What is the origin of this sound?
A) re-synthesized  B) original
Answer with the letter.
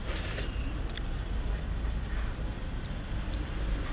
B